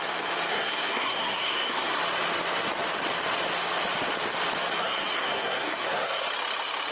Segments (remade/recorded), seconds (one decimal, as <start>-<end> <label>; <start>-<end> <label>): 0.0-0.5 recorded; 0.5-2.0 remade; 2.0-4.8 recorded; 4.8-6.3 remade; 6.3-6.9 recorded